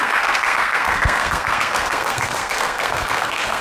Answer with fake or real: fake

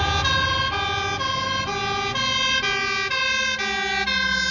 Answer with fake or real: real